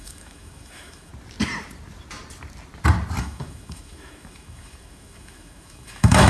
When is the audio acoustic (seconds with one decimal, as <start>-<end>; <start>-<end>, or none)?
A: 1.1-3.2